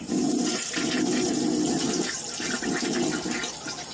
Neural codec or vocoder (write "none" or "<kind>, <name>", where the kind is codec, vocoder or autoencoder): none